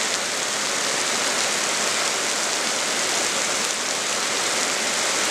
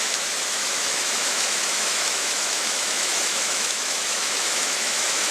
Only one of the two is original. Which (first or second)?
first